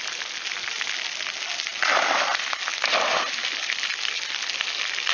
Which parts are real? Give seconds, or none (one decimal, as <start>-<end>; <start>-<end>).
0.0-5.1